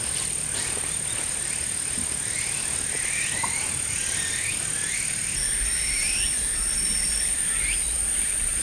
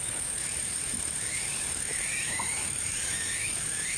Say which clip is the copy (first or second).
second